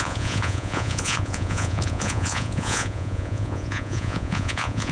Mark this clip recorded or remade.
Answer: remade